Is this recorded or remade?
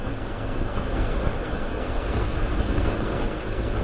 remade